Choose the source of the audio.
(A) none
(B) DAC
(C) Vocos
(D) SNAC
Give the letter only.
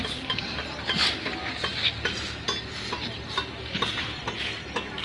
A